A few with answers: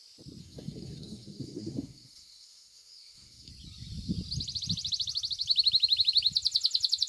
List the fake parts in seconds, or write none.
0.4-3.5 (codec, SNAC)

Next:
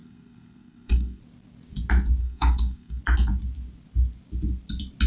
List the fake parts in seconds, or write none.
0.0-1.2 (codec, SNAC); 2.2-3.0

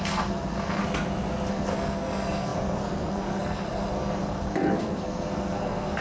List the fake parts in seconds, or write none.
0.0-0.8 (codec, SNAC); 1.5-6.0

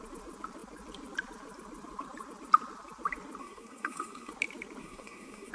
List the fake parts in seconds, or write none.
3.4-4.3 (codec, SNAC); 4.8-5.5

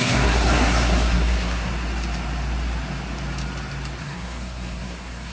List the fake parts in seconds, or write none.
0.0-1.7 (codec, SNAC); 4.0-5.3

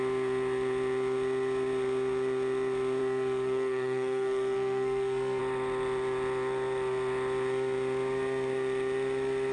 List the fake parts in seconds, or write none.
3.0-5.4 (codec, SNAC)